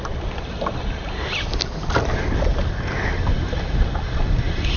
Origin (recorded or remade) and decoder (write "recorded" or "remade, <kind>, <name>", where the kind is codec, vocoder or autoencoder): recorded